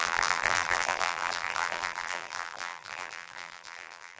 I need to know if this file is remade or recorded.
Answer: remade